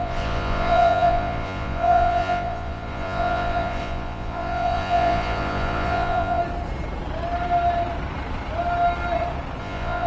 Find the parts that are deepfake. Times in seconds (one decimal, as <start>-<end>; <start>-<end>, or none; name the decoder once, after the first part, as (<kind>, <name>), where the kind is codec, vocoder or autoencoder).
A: 0.0-6.4 (vocoder, Vocos); 9.6-10.1